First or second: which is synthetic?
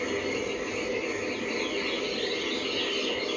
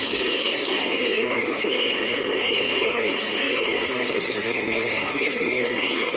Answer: second